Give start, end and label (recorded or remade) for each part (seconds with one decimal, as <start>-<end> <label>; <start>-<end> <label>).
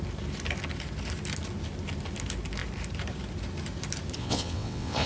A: 0.0-4.2 recorded; 4.2-5.1 remade